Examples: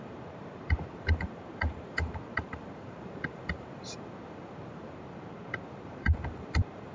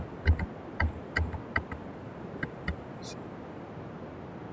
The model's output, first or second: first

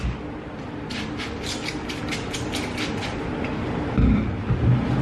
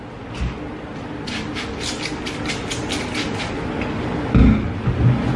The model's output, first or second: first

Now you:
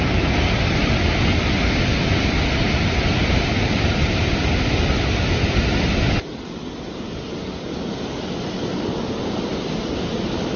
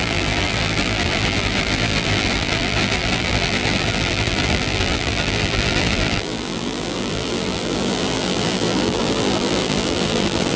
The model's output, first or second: second